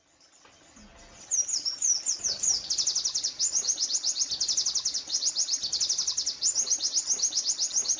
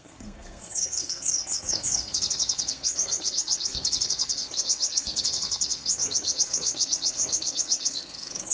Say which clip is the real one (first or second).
first